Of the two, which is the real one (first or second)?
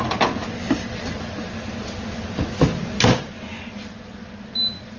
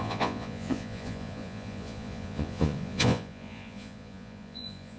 first